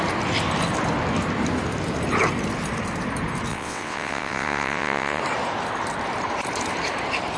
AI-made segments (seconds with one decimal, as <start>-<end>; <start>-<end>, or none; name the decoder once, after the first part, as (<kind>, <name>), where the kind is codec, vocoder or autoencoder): 3.5-5.2 (vocoder, WaveNeXt)